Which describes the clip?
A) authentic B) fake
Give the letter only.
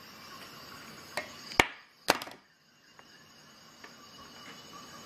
A